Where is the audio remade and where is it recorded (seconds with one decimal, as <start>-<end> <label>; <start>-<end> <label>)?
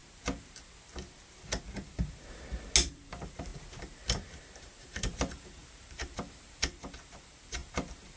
0.0-2.9 recorded; 2.9-3.5 remade; 3.5-4.3 recorded; 4.3-8.2 remade